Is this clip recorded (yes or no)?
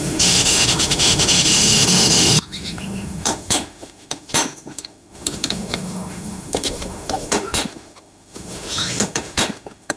no